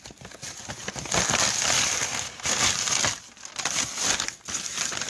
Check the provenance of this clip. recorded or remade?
recorded